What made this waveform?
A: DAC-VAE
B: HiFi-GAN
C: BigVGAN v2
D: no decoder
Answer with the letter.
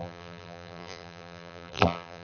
C